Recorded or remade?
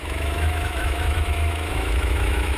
remade